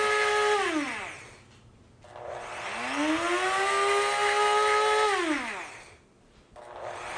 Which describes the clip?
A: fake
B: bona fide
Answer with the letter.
B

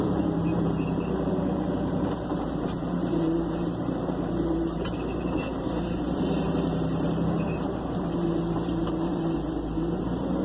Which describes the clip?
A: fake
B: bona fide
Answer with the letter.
A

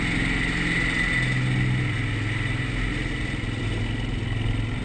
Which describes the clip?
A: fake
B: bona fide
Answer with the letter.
B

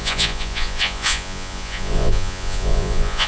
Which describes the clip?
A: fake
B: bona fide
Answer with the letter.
A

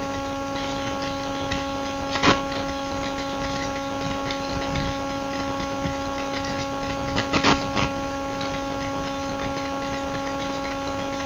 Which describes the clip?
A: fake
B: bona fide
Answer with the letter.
B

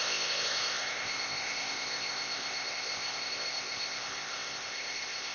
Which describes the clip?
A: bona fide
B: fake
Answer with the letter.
B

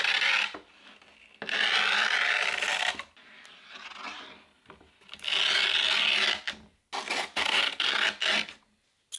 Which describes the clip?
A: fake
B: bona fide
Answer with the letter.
B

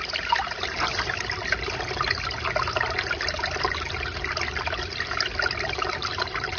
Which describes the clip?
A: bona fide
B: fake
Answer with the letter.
A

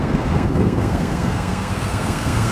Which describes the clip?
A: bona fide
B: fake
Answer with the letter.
B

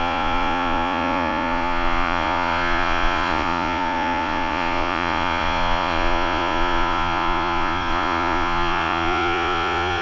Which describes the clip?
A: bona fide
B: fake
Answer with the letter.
B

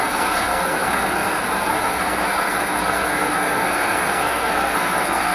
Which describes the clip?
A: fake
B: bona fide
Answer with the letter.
A